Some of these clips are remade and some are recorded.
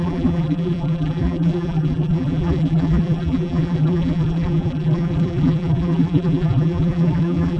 remade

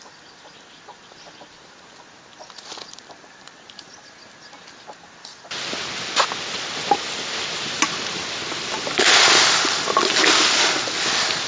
recorded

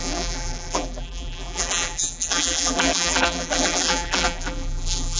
remade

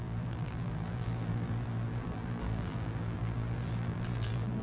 remade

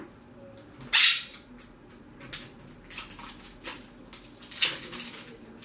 recorded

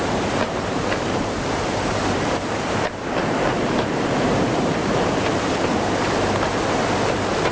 remade